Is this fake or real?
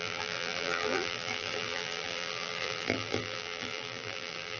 fake